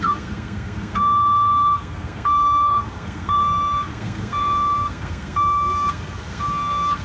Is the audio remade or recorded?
remade